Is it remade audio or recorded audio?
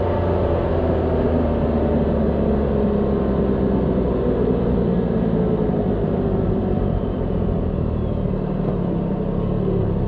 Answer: recorded